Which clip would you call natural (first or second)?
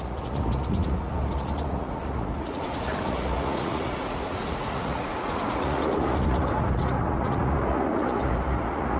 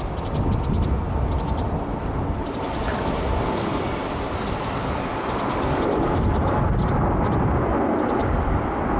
second